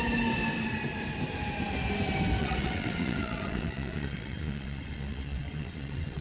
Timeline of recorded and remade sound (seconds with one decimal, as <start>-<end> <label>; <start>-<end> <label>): 0.0-2.4 recorded; 2.4-6.2 remade